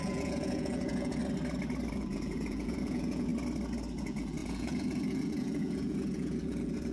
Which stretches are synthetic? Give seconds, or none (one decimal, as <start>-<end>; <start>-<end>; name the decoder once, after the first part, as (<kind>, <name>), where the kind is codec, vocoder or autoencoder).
0.0-1.2 (vocoder, Vocos); 1.9-3.3; 4.0-6.9